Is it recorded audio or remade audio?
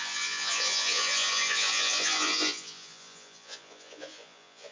remade